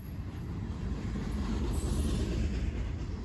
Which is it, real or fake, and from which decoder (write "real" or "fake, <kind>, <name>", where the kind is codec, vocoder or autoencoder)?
real